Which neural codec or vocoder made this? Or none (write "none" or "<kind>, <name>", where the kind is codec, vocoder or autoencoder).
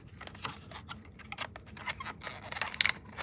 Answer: none